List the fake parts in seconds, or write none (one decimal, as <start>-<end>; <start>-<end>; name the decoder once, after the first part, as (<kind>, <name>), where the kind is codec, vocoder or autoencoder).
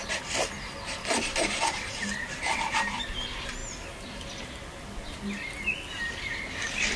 1.0-1.6 (vocoder, BigVGAN v2)